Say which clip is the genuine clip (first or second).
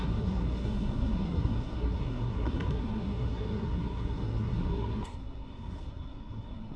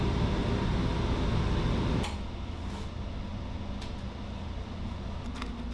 second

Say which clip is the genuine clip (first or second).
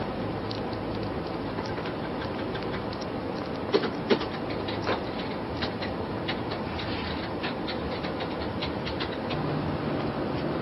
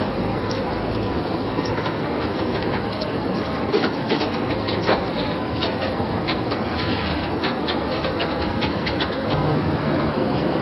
first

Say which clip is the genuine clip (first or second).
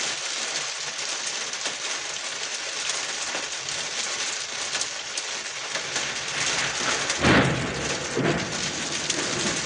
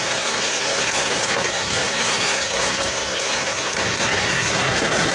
first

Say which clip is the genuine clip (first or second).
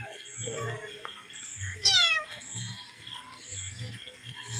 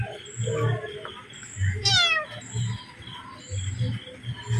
second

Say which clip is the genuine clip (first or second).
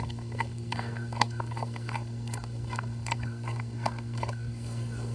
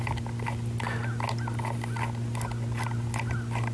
second